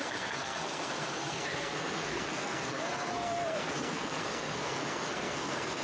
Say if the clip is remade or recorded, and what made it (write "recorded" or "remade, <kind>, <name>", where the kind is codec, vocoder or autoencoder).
remade, codec, SNAC